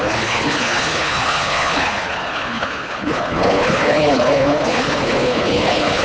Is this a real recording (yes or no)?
no